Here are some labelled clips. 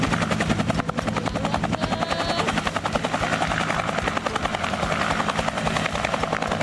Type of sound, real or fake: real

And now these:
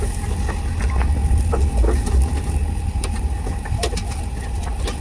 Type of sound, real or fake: real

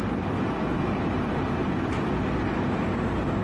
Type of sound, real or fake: real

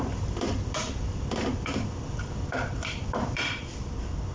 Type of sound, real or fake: fake